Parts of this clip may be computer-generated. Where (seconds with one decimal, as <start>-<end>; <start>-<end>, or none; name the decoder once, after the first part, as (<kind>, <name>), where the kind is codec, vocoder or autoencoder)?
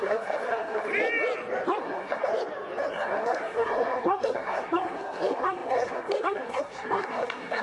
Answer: 0.0-0.9 (codec, SNAC); 1.8-2.3; 2.9-7.6